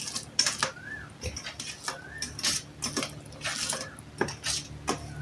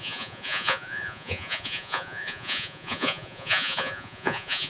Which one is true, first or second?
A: first